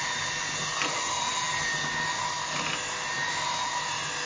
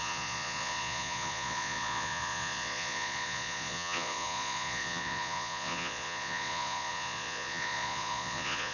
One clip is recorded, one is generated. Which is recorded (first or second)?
first